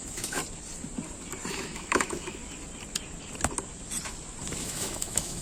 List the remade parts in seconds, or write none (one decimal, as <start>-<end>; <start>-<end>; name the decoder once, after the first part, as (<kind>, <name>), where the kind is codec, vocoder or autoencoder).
0.0-0.4 (autoencoder, DAC-VAE); 1.5-2.4; 4.6-5.4